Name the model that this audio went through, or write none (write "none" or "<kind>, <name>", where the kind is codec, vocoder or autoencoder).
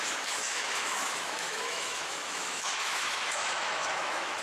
autoencoder, DAC-VAE